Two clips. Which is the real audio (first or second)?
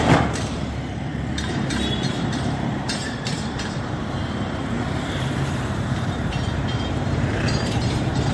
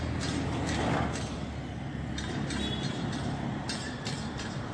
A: second